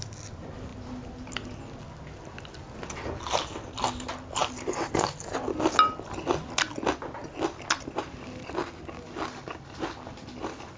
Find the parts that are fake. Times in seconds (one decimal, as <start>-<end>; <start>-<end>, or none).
none